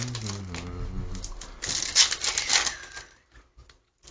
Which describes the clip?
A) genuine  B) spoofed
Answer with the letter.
A